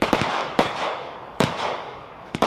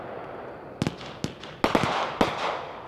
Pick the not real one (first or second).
first